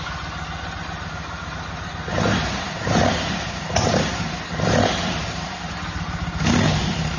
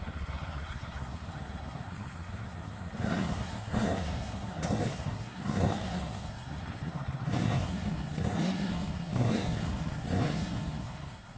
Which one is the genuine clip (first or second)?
first